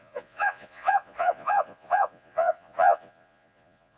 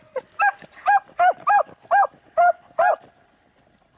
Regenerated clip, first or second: first